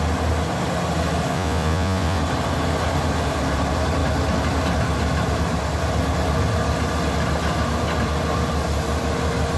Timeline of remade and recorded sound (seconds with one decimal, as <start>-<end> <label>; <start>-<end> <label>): 0.0-1.3 recorded; 1.3-2.2 remade; 2.2-9.6 recorded